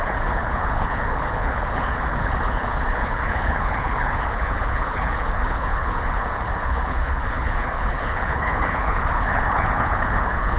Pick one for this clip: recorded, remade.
remade